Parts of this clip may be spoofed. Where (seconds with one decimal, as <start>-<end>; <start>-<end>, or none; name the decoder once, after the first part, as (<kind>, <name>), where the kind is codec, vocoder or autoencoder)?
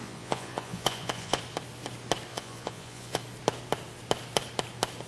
0.0-1.4 (vocoder, Vocos); 2.3-3.2